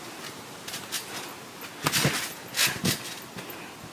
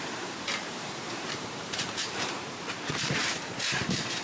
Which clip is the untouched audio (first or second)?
first